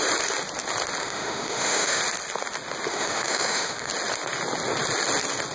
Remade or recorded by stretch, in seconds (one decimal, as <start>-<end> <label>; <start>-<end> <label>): 0.0-1.0 recorded; 1.0-2.0 remade; 2.0-2.9 recorded; 2.9-3.9 remade; 3.9-5.5 recorded